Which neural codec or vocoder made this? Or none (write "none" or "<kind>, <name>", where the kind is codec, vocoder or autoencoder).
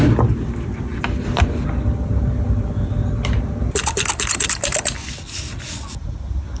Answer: none